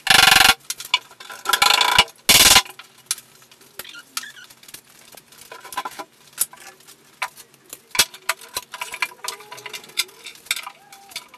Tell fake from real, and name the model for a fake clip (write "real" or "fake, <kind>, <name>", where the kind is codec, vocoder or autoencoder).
real